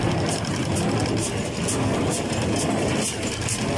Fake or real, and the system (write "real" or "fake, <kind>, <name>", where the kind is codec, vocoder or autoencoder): real